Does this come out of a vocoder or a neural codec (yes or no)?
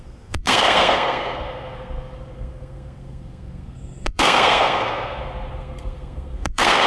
yes